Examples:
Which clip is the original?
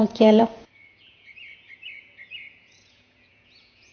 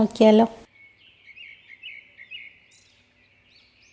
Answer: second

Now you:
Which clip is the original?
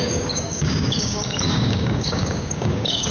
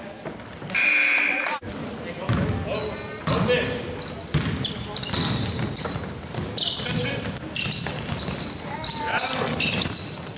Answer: second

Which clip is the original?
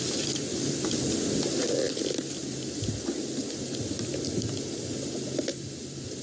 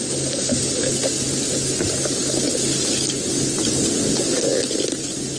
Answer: second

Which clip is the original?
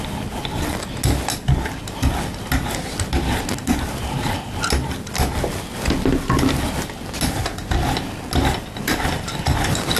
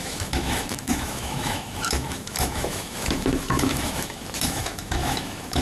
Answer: first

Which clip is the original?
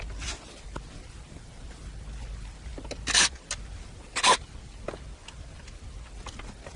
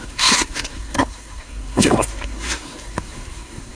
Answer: first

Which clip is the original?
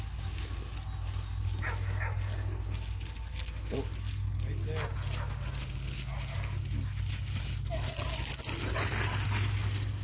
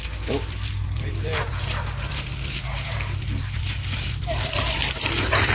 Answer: first